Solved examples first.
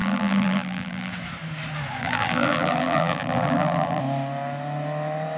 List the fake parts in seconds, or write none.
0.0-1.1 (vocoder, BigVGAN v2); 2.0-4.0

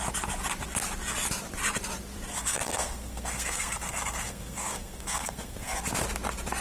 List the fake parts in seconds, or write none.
2.3-5.8 (codec, SNAC)

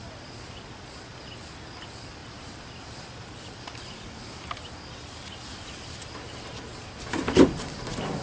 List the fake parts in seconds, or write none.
2.2-6.4 (vocoder, BigVGAN v2)

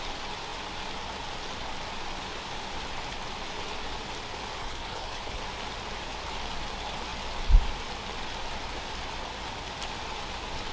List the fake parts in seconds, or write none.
4.6-5.4 (codec, HILCodec)

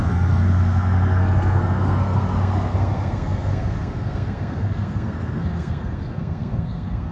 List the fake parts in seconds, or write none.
0.0-7.1 (codec, SNAC)